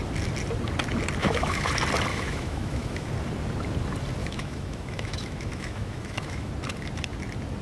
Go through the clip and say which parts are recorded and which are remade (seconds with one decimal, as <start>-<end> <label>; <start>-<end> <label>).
0.0-1.2 recorded; 1.2-1.7 remade; 1.7-2.1 recorded; 2.1-3.1 remade; 3.1-4.2 recorded; 4.2-6.5 remade; 6.5-7.6 recorded